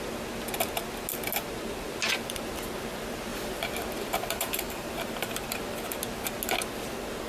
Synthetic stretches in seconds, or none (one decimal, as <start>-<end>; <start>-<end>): 3.3-4.9